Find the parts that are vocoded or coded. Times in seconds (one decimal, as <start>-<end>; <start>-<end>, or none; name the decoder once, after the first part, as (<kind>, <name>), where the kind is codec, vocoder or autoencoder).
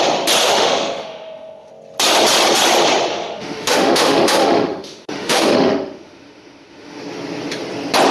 0.4-1.7 (autoencoder, DAC-VAE); 3.1-7.0